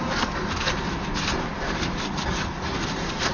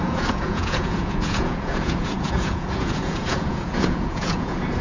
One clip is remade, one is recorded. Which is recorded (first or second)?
first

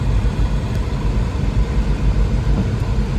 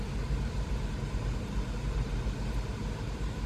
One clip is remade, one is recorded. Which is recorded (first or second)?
first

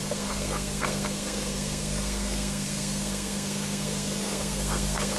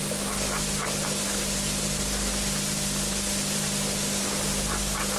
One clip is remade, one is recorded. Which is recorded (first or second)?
second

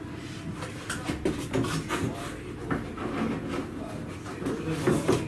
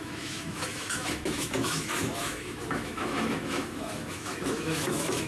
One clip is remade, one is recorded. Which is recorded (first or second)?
first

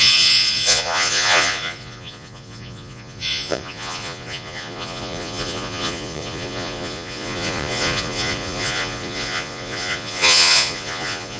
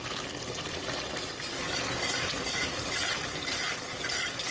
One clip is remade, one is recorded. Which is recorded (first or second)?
second